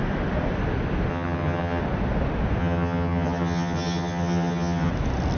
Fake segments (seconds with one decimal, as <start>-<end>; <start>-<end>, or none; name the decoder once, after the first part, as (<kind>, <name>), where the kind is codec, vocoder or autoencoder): 1.1-1.8 (vocoder, HiFi-GAN); 2.6-4.9